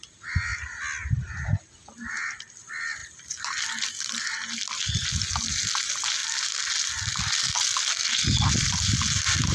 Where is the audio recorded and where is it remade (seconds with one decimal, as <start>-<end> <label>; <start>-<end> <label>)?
0.0-3.0 recorded; 3.0-4.0 remade; 4.0-6.2 recorded; 6.2-8.2 remade; 8.2-9.5 recorded

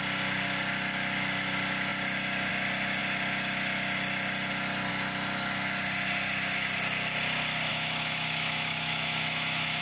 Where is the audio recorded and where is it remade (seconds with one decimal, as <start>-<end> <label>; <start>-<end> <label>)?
0.0-7.7 recorded; 7.7-9.8 remade

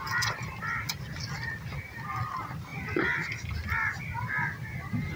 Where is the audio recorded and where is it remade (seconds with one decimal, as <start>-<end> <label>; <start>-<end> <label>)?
0.0-5.2 recorded

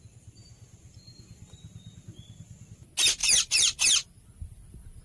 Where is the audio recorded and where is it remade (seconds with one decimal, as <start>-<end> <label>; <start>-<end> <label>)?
0.0-3.2 recorded; 3.2-5.0 remade

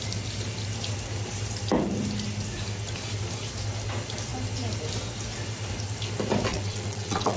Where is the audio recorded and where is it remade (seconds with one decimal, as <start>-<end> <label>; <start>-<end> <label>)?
0.0-6.5 recorded; 6.5-7.4 remade

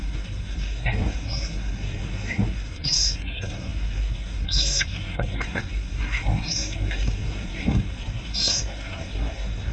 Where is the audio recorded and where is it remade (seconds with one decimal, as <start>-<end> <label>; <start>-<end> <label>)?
0.0-9.7 remade

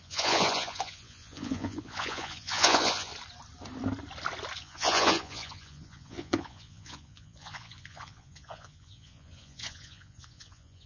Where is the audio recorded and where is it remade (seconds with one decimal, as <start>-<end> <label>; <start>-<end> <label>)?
0.0-3.1 remade; 3.1-4.6 recorded; 4.6-10.9 remade